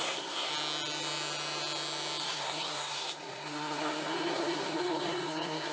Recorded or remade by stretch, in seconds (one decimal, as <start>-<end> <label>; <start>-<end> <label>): 0.0-0.5 remade; 0.5-2.2 recorded; 2.2-5.7 remade